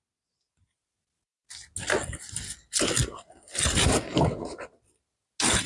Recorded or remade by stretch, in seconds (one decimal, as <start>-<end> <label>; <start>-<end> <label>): 0.0-5.7 recorded